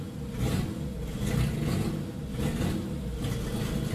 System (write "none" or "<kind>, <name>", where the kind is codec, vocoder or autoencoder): none